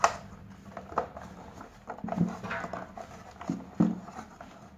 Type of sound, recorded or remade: recorded